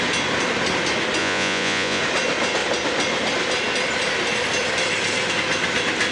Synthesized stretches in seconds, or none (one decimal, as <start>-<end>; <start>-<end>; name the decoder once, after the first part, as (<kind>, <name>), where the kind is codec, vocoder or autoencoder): 1.2-2.0 (vocoder, Vocos)